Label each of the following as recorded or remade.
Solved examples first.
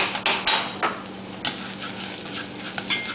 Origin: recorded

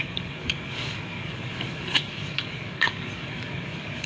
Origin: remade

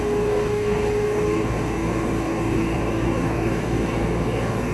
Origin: remade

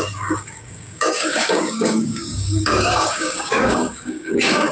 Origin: remade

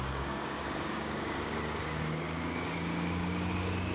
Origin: remade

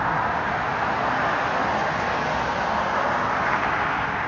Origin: recorded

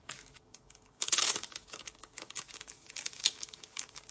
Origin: remade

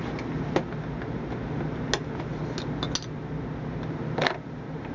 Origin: recorded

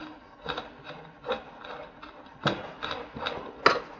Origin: recorded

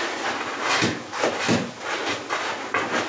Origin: recorded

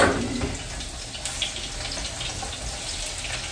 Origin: recorded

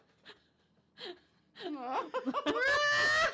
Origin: recorded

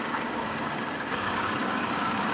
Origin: remade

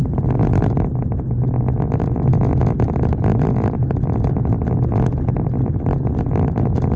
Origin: recorded